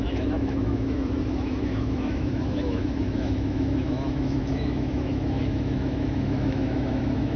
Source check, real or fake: fake